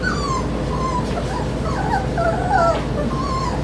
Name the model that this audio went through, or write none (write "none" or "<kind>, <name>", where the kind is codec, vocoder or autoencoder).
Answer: none